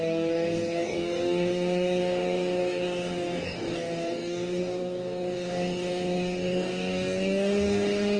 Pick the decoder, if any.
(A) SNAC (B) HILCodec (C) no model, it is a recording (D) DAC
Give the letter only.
D